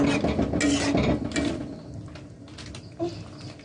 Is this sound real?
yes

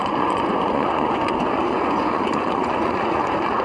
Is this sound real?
no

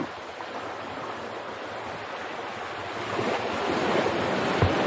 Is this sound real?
yes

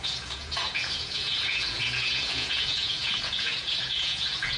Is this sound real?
no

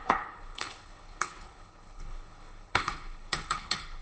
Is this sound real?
no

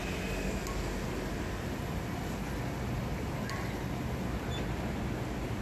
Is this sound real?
yes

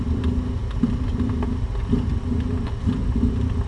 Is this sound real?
yes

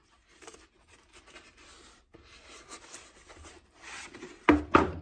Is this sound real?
yes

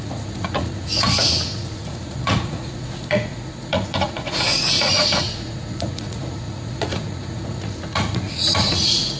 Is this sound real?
no